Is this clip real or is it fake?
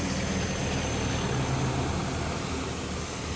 real